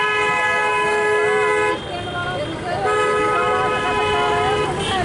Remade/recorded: recorded